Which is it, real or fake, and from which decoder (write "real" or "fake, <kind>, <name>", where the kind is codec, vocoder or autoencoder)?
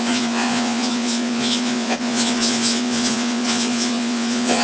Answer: fake, vocoder, Vocos